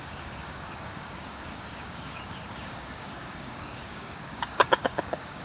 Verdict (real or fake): fake